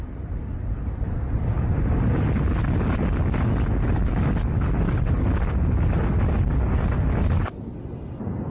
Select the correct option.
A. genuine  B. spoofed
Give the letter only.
A